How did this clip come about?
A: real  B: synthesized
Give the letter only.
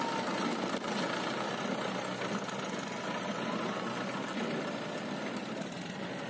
A